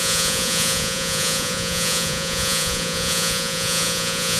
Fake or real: fake